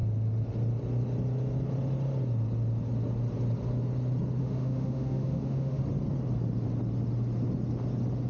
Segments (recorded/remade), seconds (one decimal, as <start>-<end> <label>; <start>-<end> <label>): 0.0-4.4 recorded; 4.4-5.8 remade; 5.8-8.3 recorded